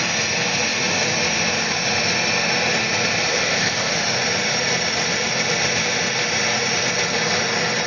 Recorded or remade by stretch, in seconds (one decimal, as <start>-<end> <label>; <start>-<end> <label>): 0.0-3.3 recorded; 3.3-3.9 remade; 3.9-7.9 recorded